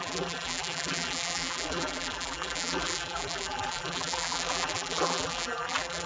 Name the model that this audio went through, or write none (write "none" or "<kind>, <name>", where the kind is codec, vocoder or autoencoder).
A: vocoder, BigVGAN v2